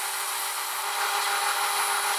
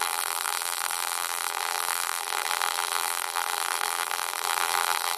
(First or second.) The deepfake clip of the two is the second